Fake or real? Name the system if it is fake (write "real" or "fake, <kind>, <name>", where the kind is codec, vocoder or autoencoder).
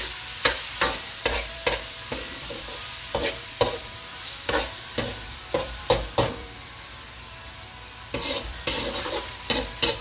fake, vocoder, BigVGAN v2